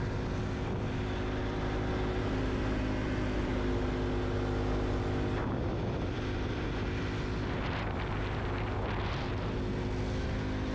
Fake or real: real